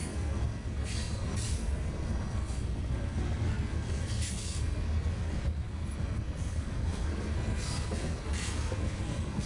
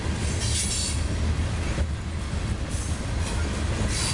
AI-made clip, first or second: first